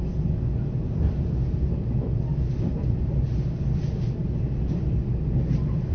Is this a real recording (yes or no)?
yes